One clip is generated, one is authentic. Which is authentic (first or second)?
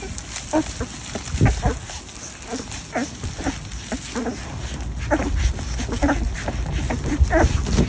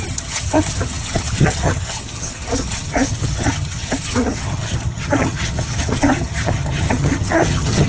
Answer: first